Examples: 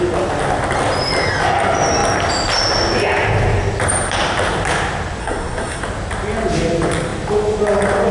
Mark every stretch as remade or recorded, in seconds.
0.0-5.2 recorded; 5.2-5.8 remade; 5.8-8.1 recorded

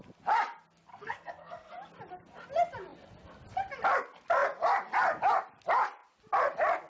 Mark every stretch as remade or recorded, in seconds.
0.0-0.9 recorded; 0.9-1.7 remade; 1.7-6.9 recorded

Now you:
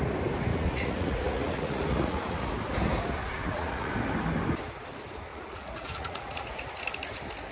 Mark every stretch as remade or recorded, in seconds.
0.0-0.5 recorded; 0.5-2.5 remade; 2.5-3.2 recorded; 3.2-3.9 remade; 3.9-5.3 recorded; 5.3-6.6 remade; 6.6-7.5 recorded